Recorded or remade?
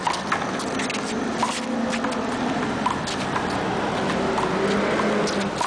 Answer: recorded